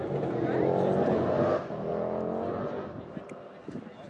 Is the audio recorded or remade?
recorded